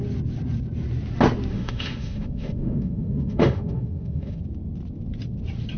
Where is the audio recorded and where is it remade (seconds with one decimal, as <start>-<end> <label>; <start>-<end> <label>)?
0.0-1.5 recorded; 1.5-4.4 remade; 4.4-5.8 recorded